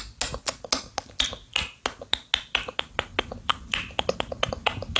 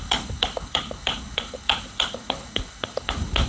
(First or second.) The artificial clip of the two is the second